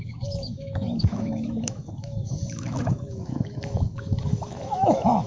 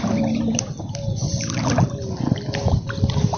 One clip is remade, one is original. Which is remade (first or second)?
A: first